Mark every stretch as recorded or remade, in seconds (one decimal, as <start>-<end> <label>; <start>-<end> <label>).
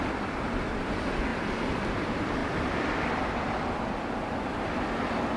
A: 0.0-2.4 remade; 2.4-5.4 recorded